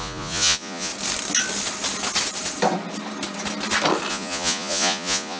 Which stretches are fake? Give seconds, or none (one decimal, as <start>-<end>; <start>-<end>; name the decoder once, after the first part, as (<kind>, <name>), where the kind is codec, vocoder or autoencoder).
0.0-0.9 (vocoder, Vocos); 4.1-5.4